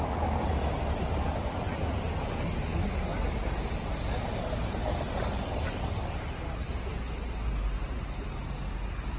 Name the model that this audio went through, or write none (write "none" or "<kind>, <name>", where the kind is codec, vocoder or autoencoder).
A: none